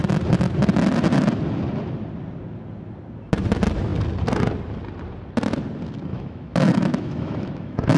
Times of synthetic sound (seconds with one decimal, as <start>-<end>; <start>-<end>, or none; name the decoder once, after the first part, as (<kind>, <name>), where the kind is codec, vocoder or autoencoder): 6.1-8.0 (autoencoder, DAC-VAE)